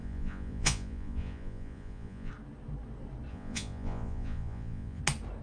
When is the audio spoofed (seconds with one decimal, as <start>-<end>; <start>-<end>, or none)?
0.0-2.3; 3.3-5.0